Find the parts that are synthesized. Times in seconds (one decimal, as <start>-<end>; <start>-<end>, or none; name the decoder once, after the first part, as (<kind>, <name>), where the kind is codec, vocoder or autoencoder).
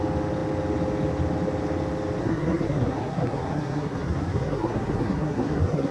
2.2-5.9 (codec, SNAC)